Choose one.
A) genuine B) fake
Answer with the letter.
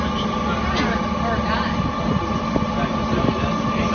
A